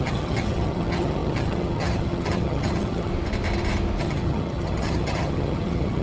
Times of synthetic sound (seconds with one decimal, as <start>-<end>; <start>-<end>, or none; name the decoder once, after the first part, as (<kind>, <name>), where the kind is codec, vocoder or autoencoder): 0.0-3.1 (vocoder, HiFi-GAN); 4.0-6.0